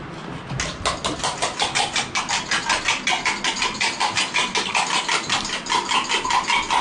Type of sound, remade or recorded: recorded